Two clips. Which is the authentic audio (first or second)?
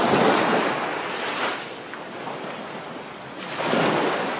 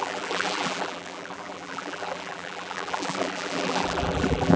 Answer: first